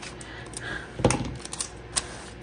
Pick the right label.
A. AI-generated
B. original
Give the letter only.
B